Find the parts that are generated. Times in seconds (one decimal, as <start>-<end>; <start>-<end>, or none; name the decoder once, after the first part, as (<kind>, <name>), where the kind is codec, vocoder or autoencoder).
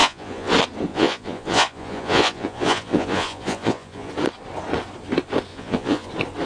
0.0-0.5 (vocoder, Vocos); 0.9-4.1; 5.5-6.1